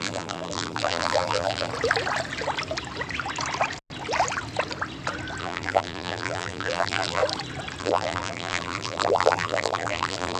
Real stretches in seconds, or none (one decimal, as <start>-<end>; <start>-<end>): 1.7-5.4; 7.2-7.8